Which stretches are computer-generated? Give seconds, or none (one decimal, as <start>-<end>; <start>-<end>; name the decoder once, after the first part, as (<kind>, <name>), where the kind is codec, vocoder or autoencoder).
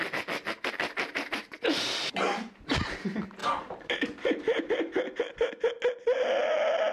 3.4-4.7 (vocoder, BigVGAN v2)